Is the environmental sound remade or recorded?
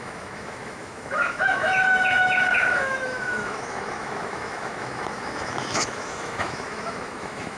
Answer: remade